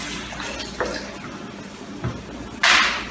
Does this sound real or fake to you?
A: real